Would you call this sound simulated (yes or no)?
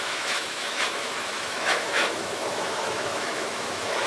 yes